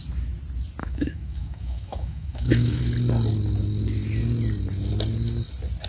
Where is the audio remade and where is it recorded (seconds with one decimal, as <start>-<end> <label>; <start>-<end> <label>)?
0.0-0.8 recorded; 0.8-2.8 remade; 2.8-5.9 recorded